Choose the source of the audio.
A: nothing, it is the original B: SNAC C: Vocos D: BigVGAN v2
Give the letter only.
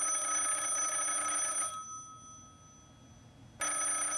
A